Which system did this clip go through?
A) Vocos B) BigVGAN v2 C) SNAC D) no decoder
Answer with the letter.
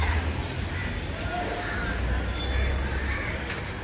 D